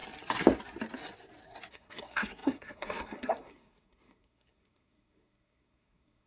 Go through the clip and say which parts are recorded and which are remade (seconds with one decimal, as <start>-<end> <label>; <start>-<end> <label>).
0.0-1.7 recorded; 1.7-6.3 remade